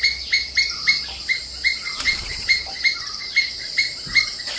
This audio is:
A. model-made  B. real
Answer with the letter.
A